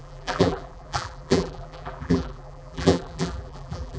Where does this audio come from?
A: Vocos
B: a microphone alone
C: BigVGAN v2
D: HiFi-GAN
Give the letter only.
C